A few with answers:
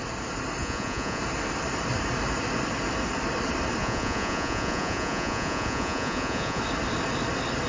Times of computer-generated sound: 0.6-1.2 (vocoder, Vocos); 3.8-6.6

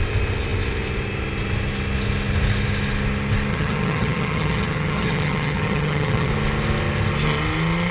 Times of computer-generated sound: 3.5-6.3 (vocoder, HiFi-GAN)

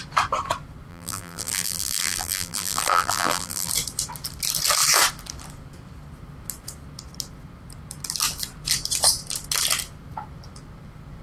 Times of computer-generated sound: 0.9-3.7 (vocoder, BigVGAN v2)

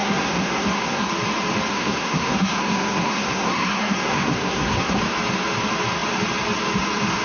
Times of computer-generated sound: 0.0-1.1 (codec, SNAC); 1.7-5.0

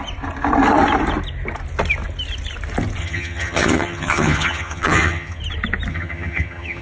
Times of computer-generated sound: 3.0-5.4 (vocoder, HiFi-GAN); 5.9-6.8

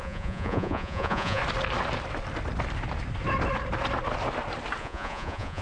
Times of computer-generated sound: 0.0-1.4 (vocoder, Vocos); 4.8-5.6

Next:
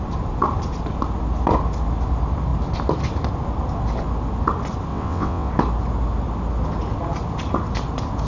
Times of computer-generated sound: 4.9-5.5 (vocoder, WaveNeXt)

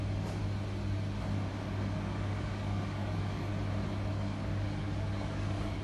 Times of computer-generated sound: 0.0-0.4 (codec, DAC); 1.5-3.5; 4.1-5.8